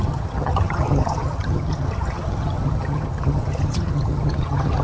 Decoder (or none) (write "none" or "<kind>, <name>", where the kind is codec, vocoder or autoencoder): vocoder, HiFi-GAN